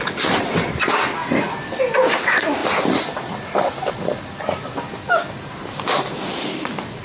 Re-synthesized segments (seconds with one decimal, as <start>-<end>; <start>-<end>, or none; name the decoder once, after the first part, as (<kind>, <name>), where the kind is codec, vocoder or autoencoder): 1.2-1.8 (vocoder, BigVGAN v2); 2.6-7.0